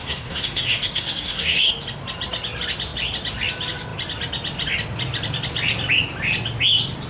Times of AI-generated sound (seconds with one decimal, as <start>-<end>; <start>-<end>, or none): 0.0-1.7